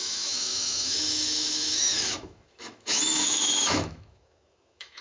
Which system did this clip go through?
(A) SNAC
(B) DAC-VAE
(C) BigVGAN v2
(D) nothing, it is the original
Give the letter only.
B